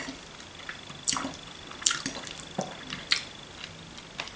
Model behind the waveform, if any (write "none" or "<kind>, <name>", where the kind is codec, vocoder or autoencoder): none